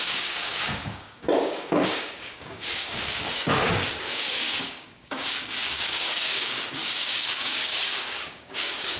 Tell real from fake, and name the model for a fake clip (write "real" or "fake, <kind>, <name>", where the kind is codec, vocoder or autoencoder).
fake, codec, DAC